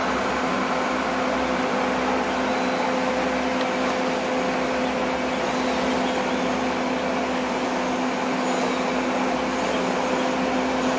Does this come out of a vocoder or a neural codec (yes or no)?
no